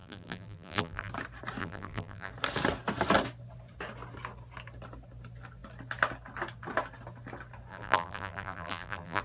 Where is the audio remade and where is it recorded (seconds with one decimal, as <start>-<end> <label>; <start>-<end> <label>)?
0.0-1.1 remade; 1.1-1.6 recorded; 1.6-2.3 remade; 2.3-7.7 recorded; 7.7-9.2 remade